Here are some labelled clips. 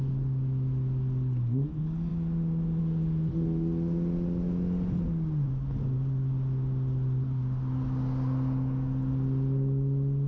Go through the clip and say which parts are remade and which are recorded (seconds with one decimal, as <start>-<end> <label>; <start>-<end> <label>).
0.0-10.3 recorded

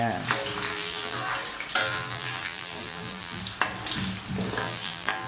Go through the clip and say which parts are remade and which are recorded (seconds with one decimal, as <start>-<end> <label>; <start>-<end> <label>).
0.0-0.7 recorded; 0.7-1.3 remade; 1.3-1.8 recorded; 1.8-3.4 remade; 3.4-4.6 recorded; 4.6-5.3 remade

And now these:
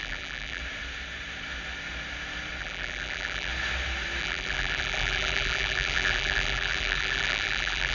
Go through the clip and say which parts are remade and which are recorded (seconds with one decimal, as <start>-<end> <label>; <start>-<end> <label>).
0.0-0.6 remade; 0.6-2.6 recorded; 2.6-3.5 remade; 3.5-4.2 recorded; 4.2-7.9 remade

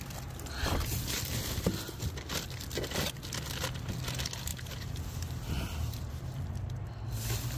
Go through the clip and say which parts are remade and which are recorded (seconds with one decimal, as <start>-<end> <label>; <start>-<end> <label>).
0.0-4.5 recorded; 4.5-6.4 remade; 6.4-7.6 recorded

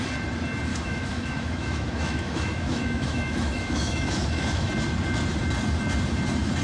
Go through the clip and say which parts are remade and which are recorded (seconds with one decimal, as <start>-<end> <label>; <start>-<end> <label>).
0.0-0.7 recorded; 0.7-4.7 remade; 4.7-6.6 recorded

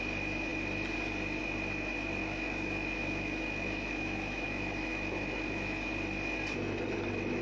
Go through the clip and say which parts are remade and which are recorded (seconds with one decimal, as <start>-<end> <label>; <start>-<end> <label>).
0.0-2.2 recorded; 2.2-5.9 remade; 5.9-7.4 recorded

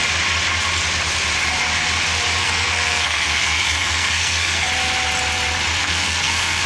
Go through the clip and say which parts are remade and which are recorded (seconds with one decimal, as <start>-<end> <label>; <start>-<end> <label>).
0.0-2.4 recorded; 2.4-4.7 remade; 4.7-5.8 recorded; 5.8-6.7 remade